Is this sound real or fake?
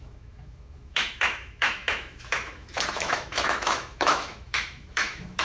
fake